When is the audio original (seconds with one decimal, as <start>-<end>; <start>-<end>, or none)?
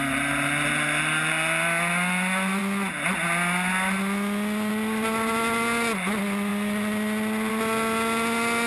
0.0-8.7